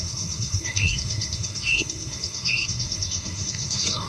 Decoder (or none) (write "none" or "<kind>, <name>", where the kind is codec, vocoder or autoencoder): codec, SNAC